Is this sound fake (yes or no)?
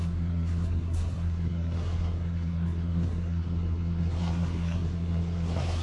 yes